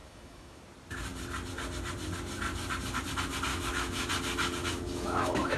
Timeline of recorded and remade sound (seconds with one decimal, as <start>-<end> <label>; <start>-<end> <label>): 0.0-0.6 remade; 0.6-3.5 recorded; 3.5-4.1 remade; 4.1-4.6 recorded; 4.6-5.6 remade